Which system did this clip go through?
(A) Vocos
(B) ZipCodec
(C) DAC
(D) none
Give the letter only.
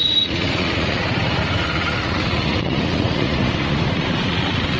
A